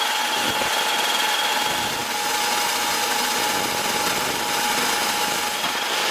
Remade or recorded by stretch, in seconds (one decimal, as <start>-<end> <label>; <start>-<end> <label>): 0.0-6.1 recorded